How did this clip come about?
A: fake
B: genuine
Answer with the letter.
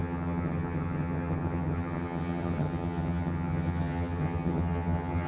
A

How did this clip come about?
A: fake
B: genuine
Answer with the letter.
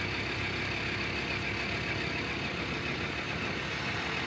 B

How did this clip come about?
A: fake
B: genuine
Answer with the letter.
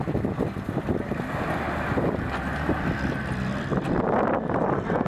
B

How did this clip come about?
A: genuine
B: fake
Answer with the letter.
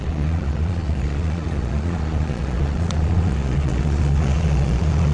B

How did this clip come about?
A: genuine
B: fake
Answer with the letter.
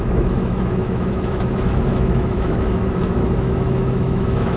B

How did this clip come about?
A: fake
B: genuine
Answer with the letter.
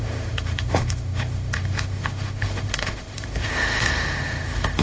A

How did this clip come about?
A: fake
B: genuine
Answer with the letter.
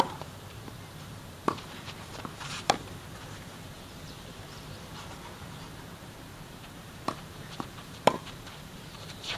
A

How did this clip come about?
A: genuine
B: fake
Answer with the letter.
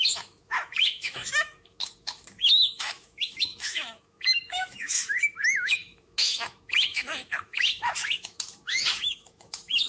B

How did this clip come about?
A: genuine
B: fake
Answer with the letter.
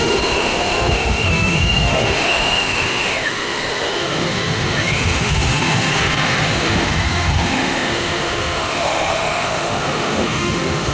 B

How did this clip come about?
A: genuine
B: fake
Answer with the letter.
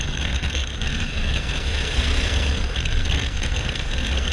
B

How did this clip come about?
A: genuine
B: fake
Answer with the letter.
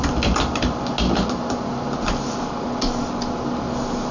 A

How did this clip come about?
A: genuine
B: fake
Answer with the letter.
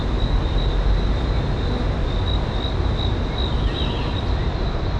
A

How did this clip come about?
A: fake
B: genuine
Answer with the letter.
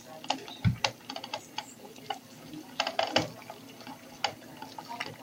B